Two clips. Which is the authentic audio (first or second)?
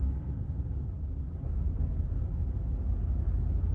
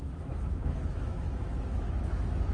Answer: first